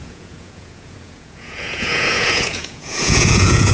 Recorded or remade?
remade